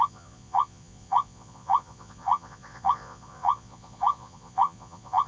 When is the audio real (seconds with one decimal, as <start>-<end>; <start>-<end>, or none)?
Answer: none